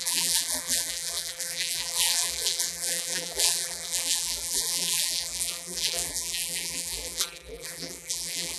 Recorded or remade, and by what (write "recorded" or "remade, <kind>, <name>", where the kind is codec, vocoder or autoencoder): remade, vocoder, BigVGAN v2